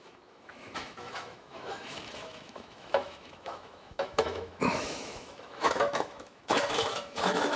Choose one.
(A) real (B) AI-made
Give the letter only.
B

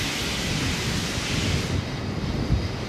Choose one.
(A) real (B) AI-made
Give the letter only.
A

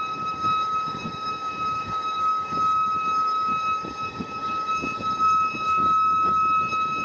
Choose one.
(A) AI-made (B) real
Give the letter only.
A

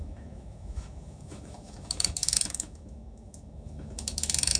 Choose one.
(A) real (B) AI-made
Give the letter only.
B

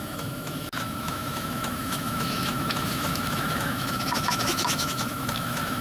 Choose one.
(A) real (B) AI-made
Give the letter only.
B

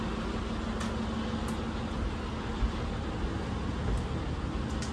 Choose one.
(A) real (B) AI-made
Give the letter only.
A